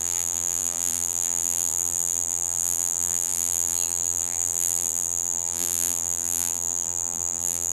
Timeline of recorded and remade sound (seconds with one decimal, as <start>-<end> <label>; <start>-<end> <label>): 0.0-7.7 remade